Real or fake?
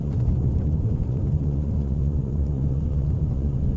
fake